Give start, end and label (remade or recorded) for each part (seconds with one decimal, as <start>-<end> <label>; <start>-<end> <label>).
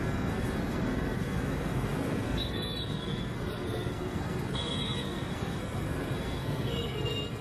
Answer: 0.0-7.4 remade